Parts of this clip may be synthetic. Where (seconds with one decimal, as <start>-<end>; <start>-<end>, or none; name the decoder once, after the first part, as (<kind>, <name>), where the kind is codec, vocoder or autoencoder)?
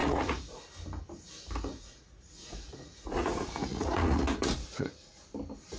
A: 0.0-0.6 (vocoder, Vocos); 1.7-5.2